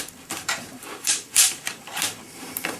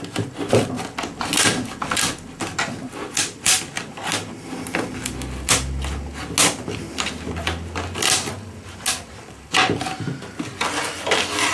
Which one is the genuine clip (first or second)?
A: second